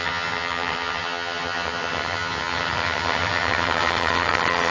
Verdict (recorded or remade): remade